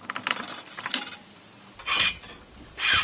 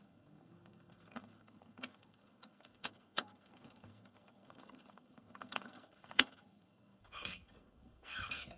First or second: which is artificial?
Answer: second